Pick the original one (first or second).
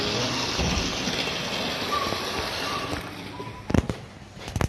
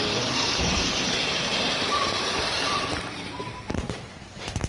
first